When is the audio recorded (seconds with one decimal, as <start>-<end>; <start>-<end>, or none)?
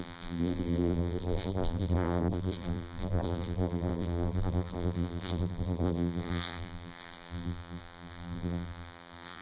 none